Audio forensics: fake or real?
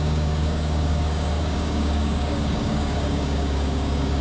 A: fake